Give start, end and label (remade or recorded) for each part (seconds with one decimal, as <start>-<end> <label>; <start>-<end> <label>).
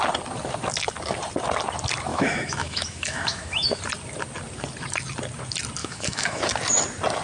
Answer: 0.0-2.1 recorded; 2.1-3.8 remade; 3.8-5.8 recorded; 5.8-6.4 remade; 6.4-7.2 recorded